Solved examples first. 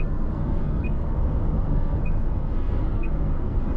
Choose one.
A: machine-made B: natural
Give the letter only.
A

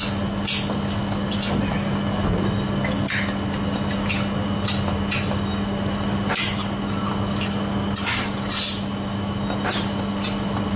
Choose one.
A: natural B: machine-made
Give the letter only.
A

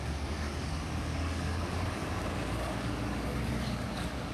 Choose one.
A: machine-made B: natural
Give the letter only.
A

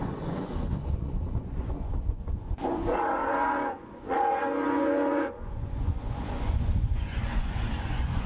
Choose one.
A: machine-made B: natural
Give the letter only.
A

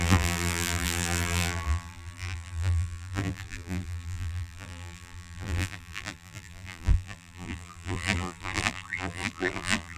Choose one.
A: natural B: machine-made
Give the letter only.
B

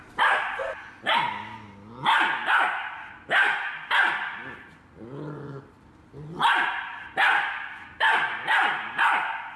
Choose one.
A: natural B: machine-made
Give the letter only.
A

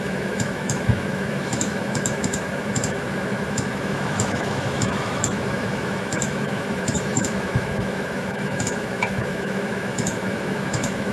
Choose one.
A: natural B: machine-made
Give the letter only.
B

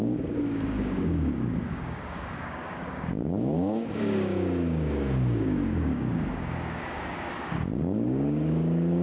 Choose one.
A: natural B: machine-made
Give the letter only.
B